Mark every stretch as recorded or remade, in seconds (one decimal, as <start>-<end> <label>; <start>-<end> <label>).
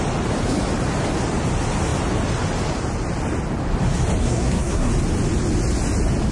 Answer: 0.0-4.2 recorded; 4.2-4.9 remade; 4.9-6.3 recorded